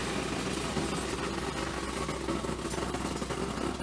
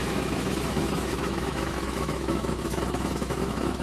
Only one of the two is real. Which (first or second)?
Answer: first